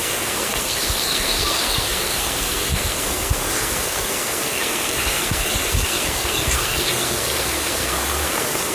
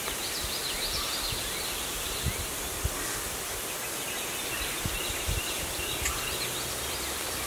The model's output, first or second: first